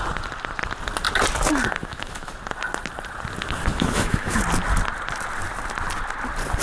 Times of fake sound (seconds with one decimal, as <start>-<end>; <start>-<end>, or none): 1.8-2.3; 3.7-4.4